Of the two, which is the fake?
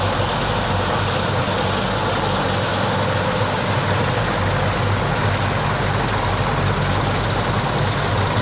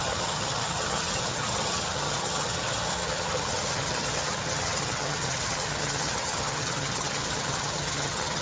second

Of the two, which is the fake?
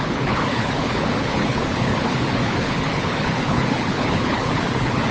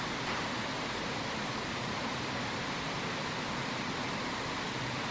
first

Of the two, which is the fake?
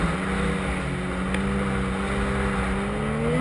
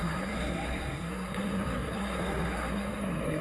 second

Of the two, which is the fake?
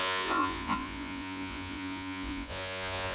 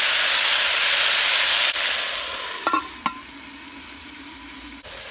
first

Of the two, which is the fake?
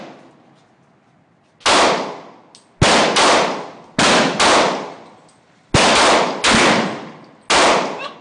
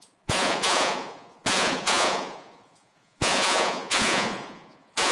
second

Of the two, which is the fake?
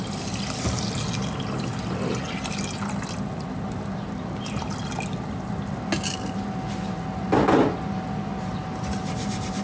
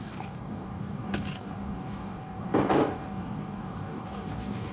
second